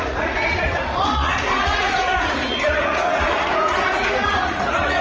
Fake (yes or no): yes